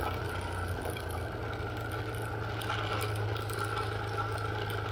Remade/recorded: recorded